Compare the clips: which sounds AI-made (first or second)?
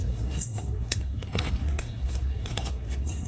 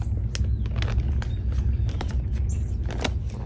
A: first